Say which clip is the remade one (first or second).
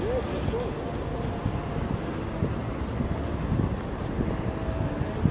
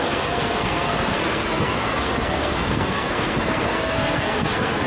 second